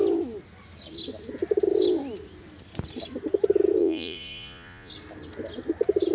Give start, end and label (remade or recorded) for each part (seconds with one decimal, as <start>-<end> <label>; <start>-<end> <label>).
0.0-3.8 recorded; 3.8-4.9 remade; 4.9-6.1 recorded